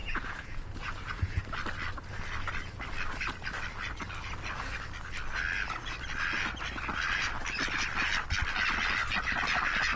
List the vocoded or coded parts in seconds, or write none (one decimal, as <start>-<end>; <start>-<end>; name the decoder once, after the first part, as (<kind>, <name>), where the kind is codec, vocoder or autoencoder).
0.0-1.4 (vocoder, Vocos)